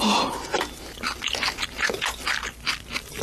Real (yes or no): yes